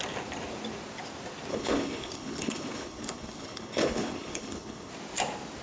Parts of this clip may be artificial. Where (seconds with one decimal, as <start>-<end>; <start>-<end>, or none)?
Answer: 1.5-4.9